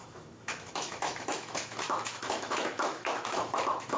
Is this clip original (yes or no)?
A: no